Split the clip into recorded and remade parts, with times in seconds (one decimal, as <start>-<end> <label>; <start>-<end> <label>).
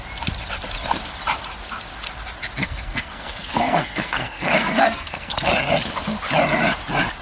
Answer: 0.0-2.6 recorded; 2.6-5.5 remade; 5.5-7.2 recorded